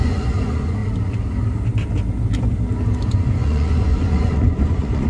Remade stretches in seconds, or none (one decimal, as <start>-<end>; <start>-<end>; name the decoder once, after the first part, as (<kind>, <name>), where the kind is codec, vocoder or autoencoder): 0.0-0.8 (vocoder, Vocos); 3.1-5.1